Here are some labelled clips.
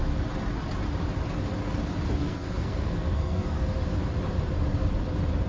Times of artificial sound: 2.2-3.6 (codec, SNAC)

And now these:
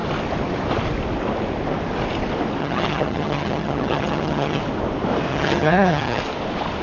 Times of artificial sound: 2.6-4.6 (vocoder, HiFi-GAN); 5.3-6.2

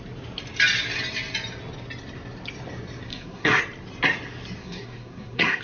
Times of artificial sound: 3.1-3.6 (codec, SNAC); 4.6-5.6